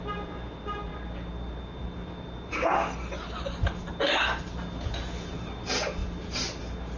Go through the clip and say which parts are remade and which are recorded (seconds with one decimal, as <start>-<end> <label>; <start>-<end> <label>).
0.0-7.0 recorded